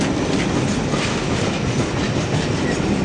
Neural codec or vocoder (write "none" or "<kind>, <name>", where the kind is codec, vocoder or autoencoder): none